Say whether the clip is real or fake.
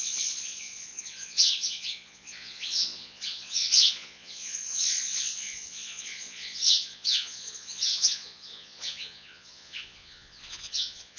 fake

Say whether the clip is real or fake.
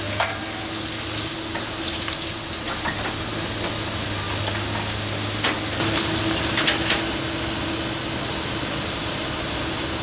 real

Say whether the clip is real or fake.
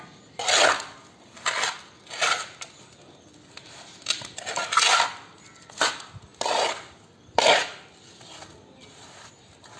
real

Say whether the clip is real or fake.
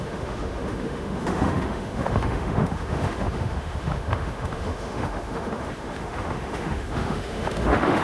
fake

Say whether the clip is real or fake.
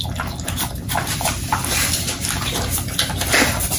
fake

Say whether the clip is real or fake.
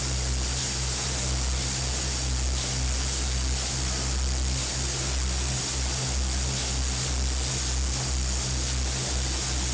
real